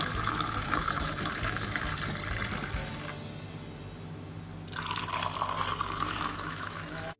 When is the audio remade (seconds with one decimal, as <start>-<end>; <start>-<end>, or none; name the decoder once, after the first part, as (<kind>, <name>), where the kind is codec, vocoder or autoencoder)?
0.0-1.9 (autoencoder, DAC-VAE); 6.2-7.2